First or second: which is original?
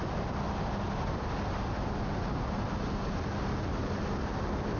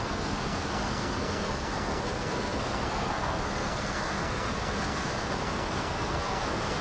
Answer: first